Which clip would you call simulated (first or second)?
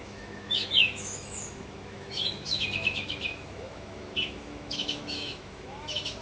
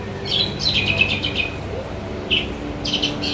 first